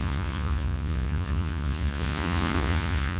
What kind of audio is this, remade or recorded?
remade